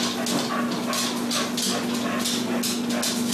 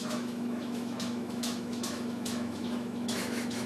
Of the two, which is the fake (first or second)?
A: second